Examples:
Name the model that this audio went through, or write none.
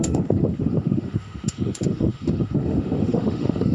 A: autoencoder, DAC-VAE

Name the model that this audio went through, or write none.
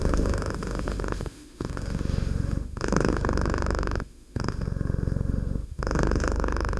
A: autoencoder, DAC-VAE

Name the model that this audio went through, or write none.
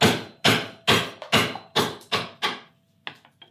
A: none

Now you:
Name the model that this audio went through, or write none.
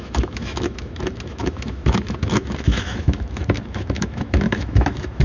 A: autoencoder, DAC-VAE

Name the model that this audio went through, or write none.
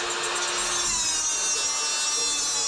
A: none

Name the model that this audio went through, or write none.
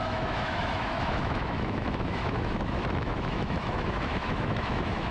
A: autoencoder, DAC-VAE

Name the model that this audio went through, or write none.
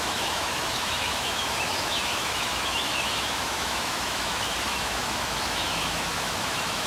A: autoencoder, DAC-VAE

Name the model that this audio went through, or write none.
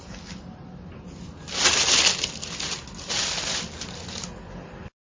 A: none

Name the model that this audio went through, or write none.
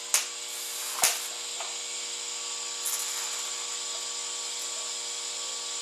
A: none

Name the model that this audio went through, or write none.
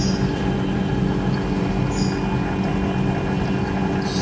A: none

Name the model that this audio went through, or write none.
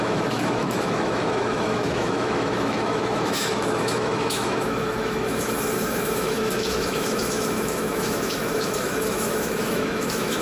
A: autoencoder, DAC-VAE